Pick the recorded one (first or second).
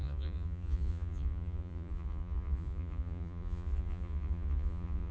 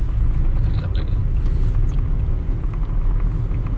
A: second